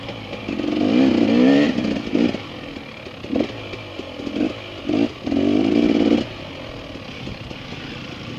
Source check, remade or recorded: recorded